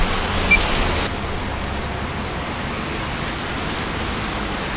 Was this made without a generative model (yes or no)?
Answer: yes